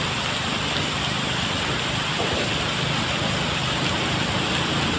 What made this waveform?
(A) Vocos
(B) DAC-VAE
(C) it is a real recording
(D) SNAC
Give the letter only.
C